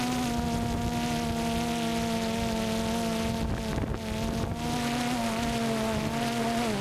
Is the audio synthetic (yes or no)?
no